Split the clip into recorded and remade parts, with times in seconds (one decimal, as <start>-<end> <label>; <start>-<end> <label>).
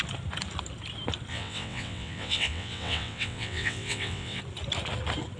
0.0-1.3 recorded; 1.3-4.4 remade; 4.4-5.4 recorded